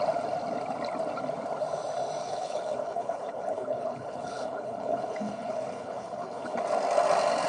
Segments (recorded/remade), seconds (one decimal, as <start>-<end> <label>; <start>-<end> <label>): 0.0-2.2 recorded; 2.2-6.6 remade; 6.6-7.5 recorded